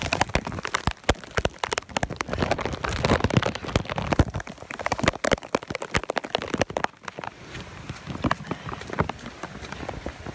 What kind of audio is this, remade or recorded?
recorded